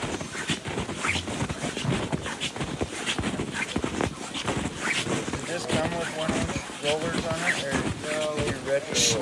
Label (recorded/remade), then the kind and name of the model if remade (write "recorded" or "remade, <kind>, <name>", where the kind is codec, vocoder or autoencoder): recorded